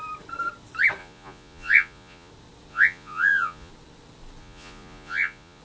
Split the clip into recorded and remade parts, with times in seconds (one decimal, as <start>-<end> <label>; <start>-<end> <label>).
0.0-1.0 recorded; 1.0-2.3 remade; 2.3-2.7 recorded; 2.7-3.7 remade; 3.7-4.4 recorded; 4.4-5.6 remade